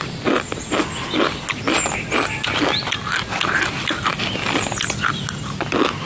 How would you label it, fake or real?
real